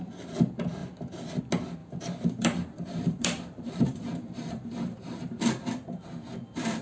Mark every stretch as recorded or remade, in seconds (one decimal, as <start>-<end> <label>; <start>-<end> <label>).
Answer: 0.0-1.8 recorded; 1.8-5.5 remade; 5.5-6.8 recorded